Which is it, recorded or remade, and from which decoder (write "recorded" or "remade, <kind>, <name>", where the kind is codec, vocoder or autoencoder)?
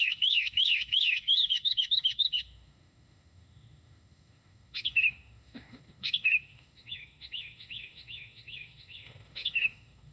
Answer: remade, autoencoder, DAC-VAE